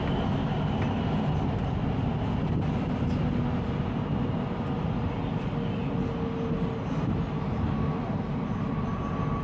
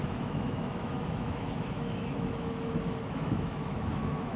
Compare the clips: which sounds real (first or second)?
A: first